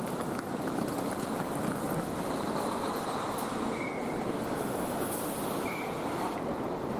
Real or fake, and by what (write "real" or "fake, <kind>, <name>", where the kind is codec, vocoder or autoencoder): real